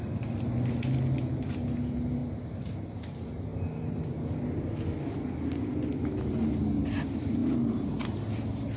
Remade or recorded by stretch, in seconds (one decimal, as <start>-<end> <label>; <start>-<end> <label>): 0.0-8.8 recorded